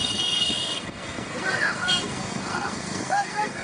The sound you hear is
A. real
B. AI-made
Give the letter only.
B